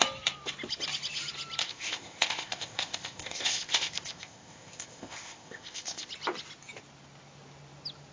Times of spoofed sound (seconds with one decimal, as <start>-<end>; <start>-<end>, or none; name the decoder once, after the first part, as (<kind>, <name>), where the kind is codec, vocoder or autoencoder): 1.6-6.1 (codec, ZipCodec)